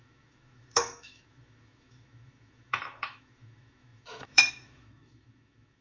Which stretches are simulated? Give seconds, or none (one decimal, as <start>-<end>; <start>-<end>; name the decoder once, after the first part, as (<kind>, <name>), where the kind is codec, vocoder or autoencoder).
0.0-5.8 (autoencoder, DAC-VAE)